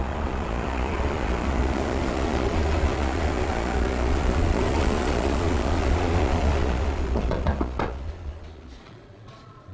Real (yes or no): no